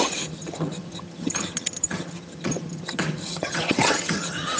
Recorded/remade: remade